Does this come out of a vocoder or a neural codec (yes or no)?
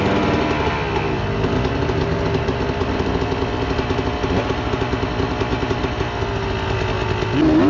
no